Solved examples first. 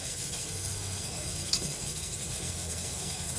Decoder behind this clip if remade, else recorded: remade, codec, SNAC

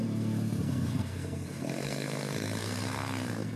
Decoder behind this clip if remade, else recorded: remade, codec, SNAC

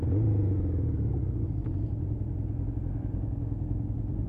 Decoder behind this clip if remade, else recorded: recorded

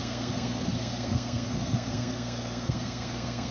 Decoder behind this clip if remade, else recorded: remade, codec, SNAC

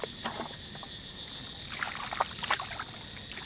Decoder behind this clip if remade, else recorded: recorded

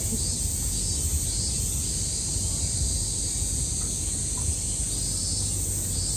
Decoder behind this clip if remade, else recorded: recorded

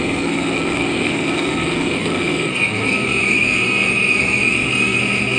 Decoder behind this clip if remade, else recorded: remade, codec, SNAC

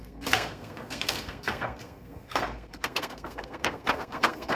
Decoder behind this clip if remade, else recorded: remade, codec, SNAC